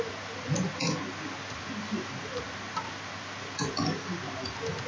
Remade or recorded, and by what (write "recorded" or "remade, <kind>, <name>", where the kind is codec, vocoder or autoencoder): recorded